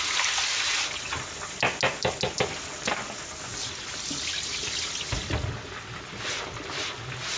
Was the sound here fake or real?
real